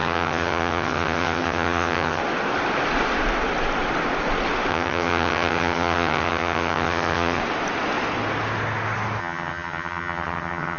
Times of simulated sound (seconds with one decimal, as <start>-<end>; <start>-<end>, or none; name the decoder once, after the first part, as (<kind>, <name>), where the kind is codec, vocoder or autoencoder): 0.0-2.2 (vocoder, HiFi-GAN); 4.7-7.4; 9.2-10.8